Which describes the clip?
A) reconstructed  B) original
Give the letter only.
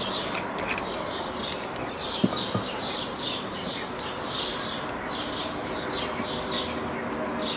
B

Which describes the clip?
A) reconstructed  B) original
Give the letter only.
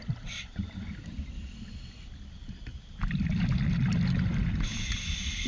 B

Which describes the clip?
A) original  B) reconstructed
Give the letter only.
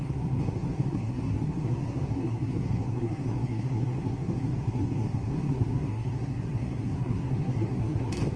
B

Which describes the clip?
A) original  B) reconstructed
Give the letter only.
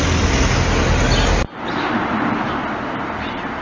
A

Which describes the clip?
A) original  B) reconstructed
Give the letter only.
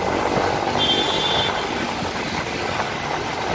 A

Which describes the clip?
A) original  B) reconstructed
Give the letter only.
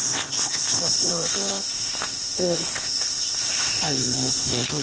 B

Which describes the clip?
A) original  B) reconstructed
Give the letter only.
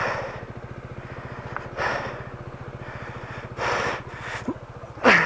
A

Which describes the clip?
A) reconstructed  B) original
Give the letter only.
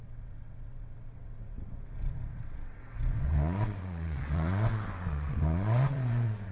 A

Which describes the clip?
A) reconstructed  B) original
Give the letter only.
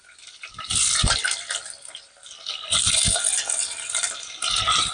B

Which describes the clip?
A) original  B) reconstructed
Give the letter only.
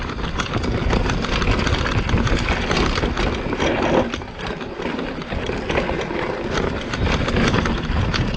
A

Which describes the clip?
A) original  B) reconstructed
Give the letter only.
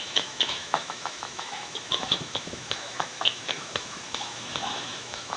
B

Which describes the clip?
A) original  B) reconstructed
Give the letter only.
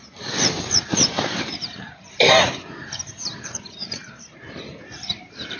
B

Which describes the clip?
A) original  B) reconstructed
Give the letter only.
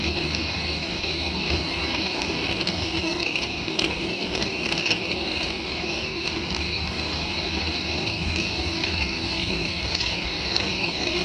B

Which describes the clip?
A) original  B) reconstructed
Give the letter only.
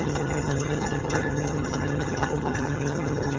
B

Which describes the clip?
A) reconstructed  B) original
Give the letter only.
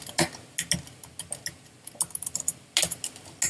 B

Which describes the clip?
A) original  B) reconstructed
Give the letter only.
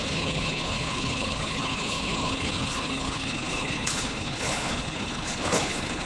B